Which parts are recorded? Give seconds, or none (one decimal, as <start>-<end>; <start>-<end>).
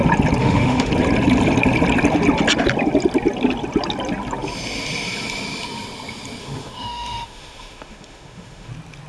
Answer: 0.0-0.4; 0.9-6.4; 8.7-9.1